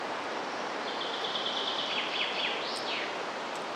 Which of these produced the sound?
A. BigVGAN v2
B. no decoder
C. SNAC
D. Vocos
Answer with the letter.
B